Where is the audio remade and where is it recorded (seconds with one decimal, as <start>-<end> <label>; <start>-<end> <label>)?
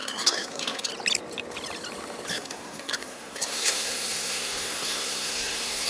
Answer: 0.0-0.9 remade; 0.9-2.3 recorded; 2.3-5.9 remade